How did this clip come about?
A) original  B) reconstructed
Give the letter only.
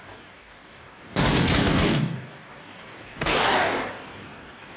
B